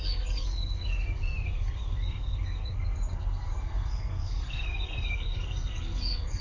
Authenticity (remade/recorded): remade